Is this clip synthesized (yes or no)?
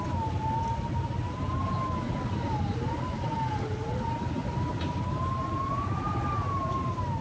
no